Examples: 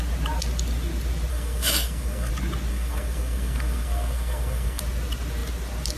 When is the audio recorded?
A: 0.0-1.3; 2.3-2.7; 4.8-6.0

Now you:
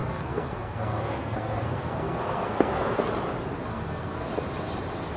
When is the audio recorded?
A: 3.1-3.7; 4.3-5.2

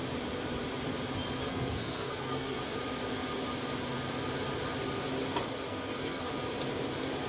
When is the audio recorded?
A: 0.0-1.4; 2.6-5.7; 6.3-7.3

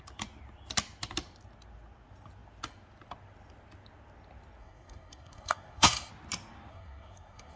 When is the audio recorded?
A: 0.0-4.6; 6.1-6.7